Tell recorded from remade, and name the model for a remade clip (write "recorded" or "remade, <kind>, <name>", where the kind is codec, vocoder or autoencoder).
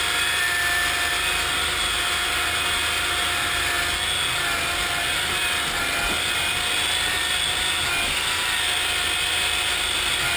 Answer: recorded